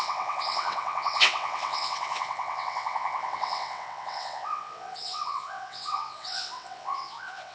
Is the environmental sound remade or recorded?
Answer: remade